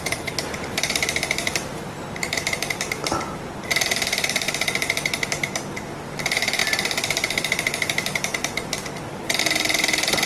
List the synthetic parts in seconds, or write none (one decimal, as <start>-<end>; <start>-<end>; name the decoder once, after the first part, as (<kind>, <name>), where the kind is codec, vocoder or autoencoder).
none